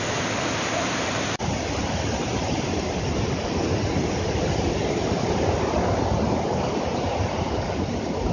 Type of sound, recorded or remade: recorded